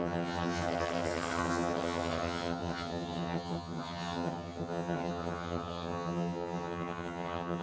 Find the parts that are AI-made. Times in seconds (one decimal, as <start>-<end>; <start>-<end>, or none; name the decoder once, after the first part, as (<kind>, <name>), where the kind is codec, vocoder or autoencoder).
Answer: 0.0-7.6 (vocoder, HiFi-GAN)

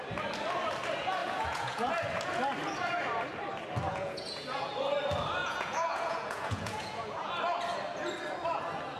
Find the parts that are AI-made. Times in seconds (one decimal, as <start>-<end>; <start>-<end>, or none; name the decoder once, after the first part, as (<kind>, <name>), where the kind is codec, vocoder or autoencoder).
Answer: 1.2-1.9 (vocoder, Vocos); 3.9-4.7; 5.4-7.3

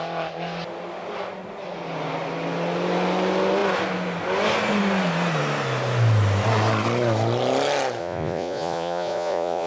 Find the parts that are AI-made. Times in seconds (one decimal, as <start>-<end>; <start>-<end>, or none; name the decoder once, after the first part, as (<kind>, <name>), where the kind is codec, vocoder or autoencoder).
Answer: 8.0-9.7 (vocoder, Vocos)